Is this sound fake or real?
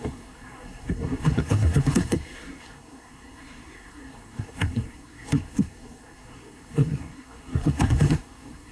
fake